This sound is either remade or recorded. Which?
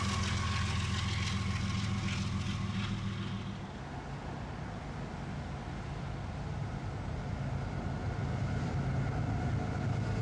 recorded